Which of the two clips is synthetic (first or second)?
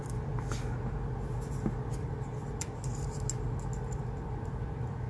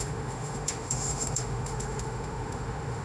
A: second